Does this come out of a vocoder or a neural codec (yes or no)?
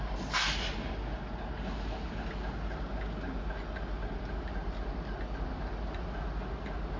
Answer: no